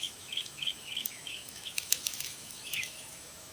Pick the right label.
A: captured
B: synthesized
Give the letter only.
B